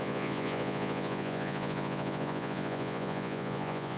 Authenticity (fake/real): fake